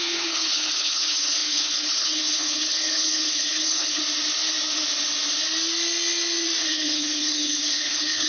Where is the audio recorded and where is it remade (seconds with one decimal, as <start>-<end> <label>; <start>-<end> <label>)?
0.0-4.0 remade; 4.0-6.6 recorded; 6.6-8.3 remade